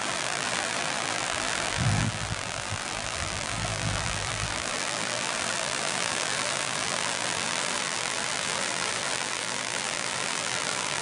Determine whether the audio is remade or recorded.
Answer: remade